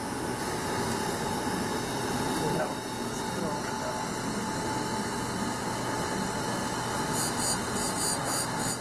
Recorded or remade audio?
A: recorded